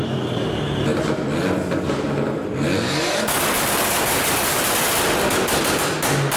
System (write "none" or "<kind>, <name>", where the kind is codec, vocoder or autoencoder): none